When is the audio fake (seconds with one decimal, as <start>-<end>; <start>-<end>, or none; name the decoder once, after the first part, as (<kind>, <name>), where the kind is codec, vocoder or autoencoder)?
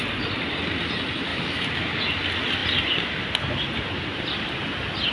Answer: 1.3-2.0 (autoencoder, DAC-VAE)